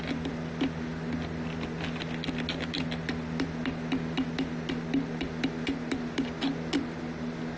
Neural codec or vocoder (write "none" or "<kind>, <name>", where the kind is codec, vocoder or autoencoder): none